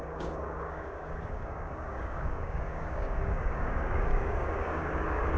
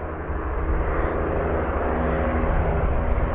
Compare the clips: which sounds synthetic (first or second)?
first